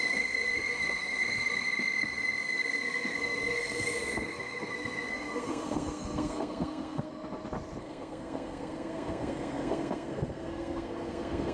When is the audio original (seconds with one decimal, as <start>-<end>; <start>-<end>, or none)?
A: 7.1-7.8

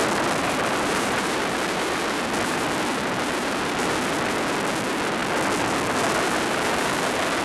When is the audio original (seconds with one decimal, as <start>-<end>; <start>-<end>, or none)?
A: 4.4-7.4

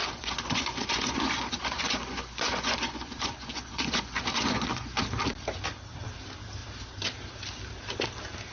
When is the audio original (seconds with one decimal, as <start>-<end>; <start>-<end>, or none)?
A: 5.0-8.5

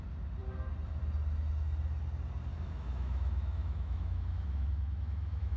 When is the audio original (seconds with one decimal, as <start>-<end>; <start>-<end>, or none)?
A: 0.0-2.5

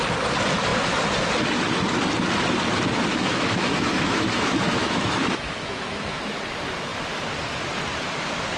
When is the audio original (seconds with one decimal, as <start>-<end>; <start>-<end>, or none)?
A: 0.0-3.1; 6.4-8.6

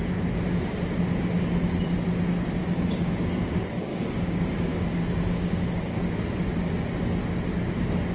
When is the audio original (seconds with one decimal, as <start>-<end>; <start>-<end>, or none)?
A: 0.0-2.6; 3.1-3.9; 6.0-8.1

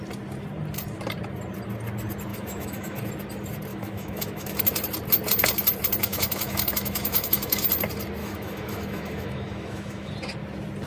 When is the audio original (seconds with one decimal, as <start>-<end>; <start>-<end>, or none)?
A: 0.0-2.3; 3.0-3.7; 4.6-6.0; 7.7-8.2; 10.1-10.9

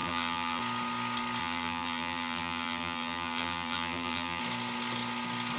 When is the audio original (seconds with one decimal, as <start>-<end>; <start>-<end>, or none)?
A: 0.6-1.4; 4.4-5.6